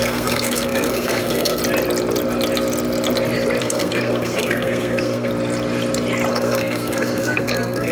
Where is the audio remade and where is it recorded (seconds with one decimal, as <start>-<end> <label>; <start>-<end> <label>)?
0.0-1.6 remade; 1.6-3.6 recorded; 3.6-5.3 remade; 5.3-6.3 recorded; 6.3-7.9 remade

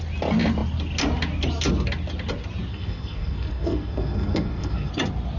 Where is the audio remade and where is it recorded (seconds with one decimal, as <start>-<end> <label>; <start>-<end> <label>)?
0.0-2.7 recorded; 2.7-4.9 remade; 4.9-5.4 recorded

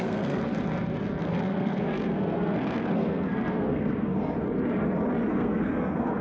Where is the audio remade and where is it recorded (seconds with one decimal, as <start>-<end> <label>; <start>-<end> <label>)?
0.0-0.4 remade; 0.4-1.2 recorded; 1.2-4.2 remade; 4.2-5.3 recorded; 5.3-6.2 remade